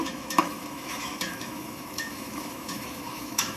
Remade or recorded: remade